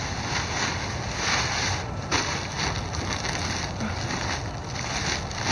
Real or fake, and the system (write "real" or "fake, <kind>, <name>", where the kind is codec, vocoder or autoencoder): real